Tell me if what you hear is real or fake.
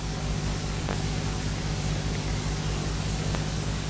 fake